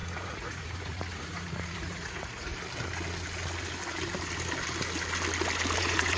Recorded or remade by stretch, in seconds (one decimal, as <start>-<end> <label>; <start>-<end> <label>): 0.0-2.5 remade; 2.5-5.8 recorded; 5.8-6.2 remade